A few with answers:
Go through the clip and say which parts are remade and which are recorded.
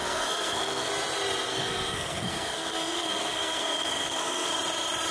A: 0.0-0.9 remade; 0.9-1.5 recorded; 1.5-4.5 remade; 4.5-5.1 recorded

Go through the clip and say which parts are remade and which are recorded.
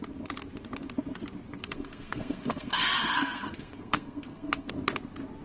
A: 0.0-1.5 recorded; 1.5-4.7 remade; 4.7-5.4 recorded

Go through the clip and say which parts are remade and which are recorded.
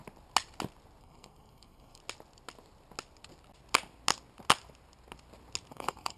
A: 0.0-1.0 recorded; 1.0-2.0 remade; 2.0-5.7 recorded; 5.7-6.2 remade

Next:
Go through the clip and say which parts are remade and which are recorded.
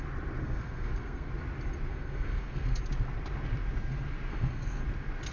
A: 0.0-0.4 recorded; 0.4-1.3 remade; 1.3-1.9 recorded; 1.9-2.8 remade; 2.8-4.3 recorded; 4.3-4.8 remade; 4.8-5.3 recorded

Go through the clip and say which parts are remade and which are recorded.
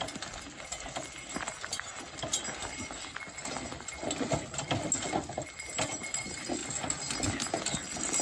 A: 0.0-8.2 recorded